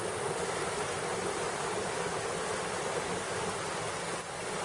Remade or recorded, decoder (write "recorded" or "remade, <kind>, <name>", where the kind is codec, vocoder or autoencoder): recorded